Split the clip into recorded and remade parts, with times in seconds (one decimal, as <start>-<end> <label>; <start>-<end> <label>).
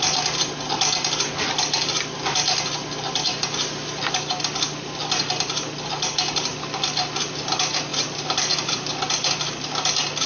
0.0-10.3 recorded